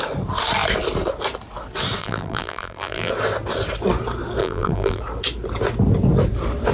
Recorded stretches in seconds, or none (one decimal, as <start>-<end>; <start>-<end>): 0.0-2.0; 3.1-4.4; 5.0-6.7